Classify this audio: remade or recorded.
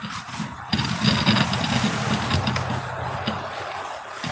recorded